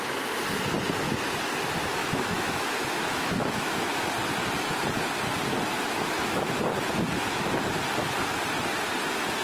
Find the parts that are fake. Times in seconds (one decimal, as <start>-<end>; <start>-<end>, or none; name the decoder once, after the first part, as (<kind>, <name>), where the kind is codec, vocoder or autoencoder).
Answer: 2.0-3.9 (autoencoder, DAC-VAE); 5.7-6.6